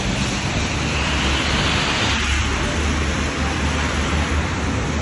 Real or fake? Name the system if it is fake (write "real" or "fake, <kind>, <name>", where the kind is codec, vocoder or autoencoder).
real